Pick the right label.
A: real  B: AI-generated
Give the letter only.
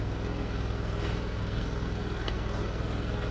B